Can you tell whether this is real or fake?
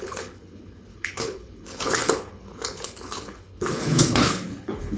fake